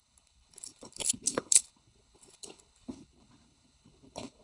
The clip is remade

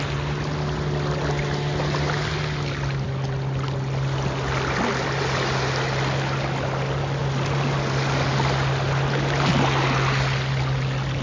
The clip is recorded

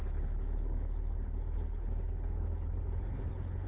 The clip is remade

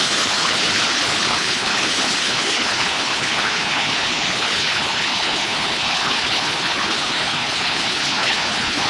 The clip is remade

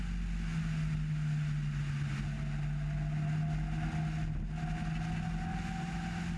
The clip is recorded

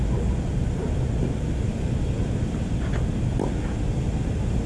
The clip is recorded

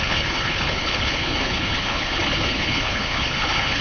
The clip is remade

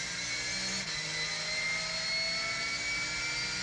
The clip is recorded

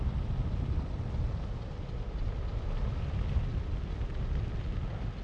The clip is recorded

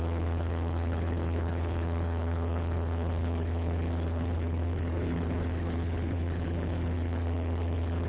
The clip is remade